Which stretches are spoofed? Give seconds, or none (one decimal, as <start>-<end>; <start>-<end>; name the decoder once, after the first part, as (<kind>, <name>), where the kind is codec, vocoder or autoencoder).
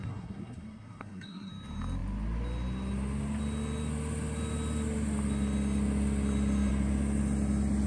0.0-1.5 (codec, SNAC)